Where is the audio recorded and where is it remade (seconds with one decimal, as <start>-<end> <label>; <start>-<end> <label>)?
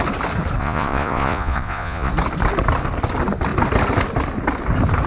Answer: 0.0-0.6 recorded; 0.6-2.1 remade; 2.1-5.1 recorded